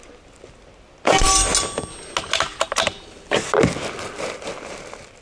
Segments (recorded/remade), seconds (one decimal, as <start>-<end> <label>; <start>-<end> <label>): 0.0-5.2 recorded